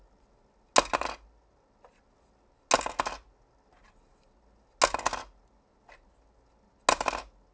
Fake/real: real